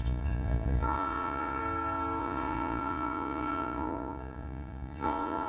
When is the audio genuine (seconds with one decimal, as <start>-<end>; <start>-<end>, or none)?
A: 1.6-2.2